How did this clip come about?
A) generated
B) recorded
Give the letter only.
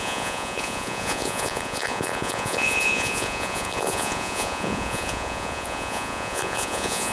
A